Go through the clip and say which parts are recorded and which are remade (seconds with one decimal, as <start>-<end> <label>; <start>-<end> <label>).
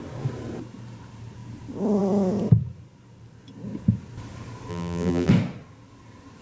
0.0-4.7 recorded; 4.7-5.3 remade; 5.3-6.4 recorded